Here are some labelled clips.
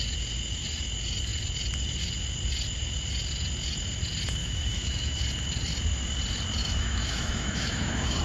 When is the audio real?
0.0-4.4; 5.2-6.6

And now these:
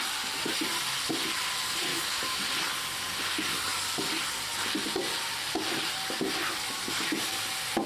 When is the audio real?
0.0-1.9; 2.4-7.9